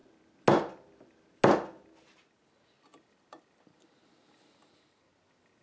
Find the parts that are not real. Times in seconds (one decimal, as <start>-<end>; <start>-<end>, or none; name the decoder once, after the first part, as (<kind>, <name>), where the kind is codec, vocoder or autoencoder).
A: none